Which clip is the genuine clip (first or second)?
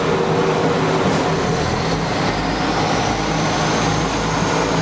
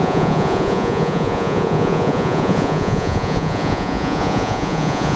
first